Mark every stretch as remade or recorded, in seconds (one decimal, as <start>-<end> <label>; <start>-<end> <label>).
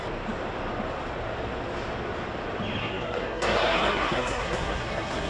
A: 0.0-2.8 recorded; 2.8-5.3 remade